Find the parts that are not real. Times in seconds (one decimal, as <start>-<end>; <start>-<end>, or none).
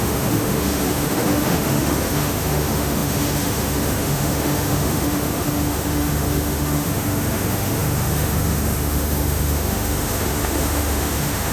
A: 0.0-11.5